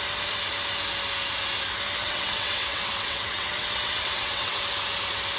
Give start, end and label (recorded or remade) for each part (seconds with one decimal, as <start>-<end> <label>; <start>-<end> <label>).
0.0-2.0 recorded; 2.0-4.6 remade; 4.6-5.4 recorded